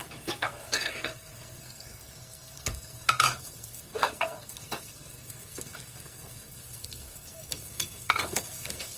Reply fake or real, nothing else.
fake